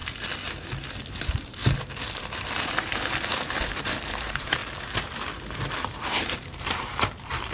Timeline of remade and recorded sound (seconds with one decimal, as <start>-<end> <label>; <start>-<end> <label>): 0.0-1.1 recorded; 1.1-1.6 remade; 1.6-2.2 recorded; 2.2-4.6 remade; 4.6-5.8 recorded; 5.8-7.5 remade